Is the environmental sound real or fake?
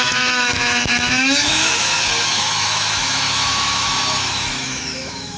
fake